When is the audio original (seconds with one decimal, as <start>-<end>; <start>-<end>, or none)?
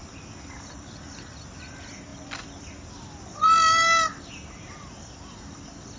0.0-6.0